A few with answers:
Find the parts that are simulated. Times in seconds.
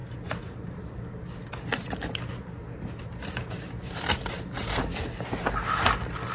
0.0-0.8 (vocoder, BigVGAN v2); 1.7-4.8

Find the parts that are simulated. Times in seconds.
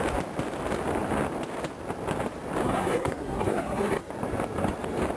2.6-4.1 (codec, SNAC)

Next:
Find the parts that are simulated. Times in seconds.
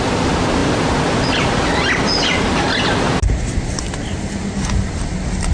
none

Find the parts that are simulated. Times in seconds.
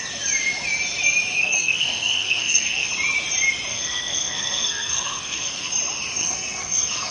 1.4-2.9 (codec, SNAC); 3.7-5.7; 6.2-7.1